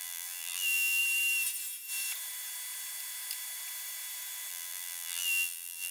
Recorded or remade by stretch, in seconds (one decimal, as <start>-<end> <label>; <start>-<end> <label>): 0.0-1.0 remade; 1.0-4.5 recorded; 4.5-5.9 remade